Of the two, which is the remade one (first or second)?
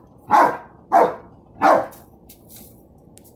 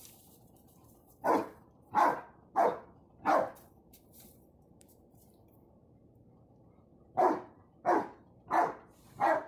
second